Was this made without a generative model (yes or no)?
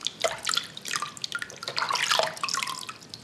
yes